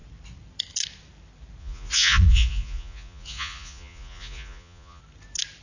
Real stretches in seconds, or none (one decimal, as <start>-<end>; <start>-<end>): 0.0-1.6; 5.0-5.6